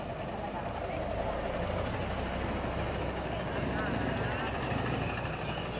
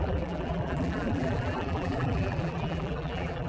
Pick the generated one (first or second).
second